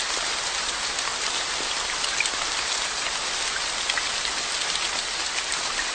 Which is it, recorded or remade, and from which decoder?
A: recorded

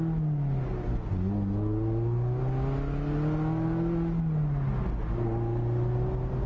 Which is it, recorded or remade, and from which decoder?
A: recorded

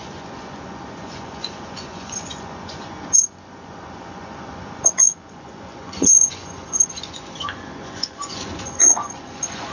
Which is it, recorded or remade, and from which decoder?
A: remade, vocoder, Vocos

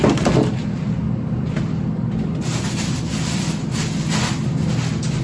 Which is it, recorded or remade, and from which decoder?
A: recorded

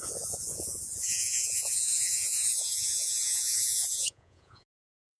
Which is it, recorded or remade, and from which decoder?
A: remade, vocoder, Vocos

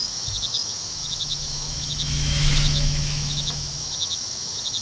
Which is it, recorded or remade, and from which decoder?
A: remade, autoencoder, DAC-VAE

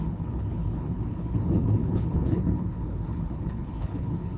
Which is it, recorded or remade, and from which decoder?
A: remade, codec, HILCodec